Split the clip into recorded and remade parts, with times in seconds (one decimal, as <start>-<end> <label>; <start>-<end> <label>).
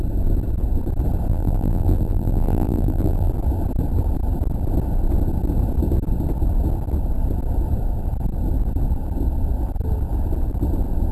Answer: 0.0-1.3 recorded; 1.3-3.3 remade; 3.3-11.1 recorded